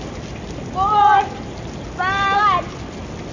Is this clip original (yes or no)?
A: yes